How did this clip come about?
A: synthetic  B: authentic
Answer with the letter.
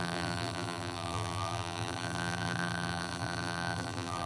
A